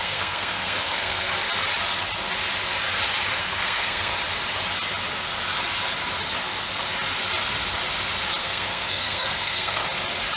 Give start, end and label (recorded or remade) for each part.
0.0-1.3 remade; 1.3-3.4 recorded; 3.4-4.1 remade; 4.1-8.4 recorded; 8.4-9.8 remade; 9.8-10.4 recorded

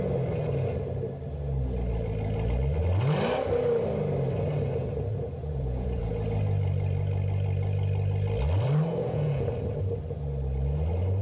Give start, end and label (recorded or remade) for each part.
0.0-5.1 recorded; 5.1-6.1 remade; 6.1-9.0 recorded; 9.0-9.5 remade; 9.5-11.2 recorded